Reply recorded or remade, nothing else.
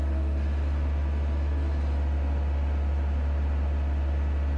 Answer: recorded